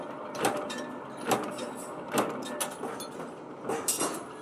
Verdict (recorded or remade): recorded